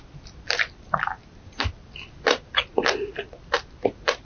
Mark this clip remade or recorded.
recorded